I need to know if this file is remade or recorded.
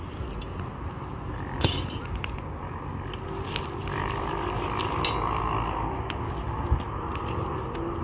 recorded